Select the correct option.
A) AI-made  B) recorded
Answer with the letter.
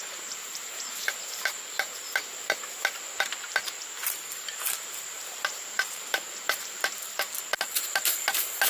A